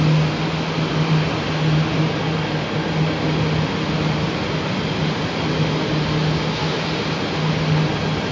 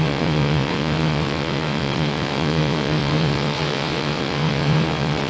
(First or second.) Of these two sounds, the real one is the first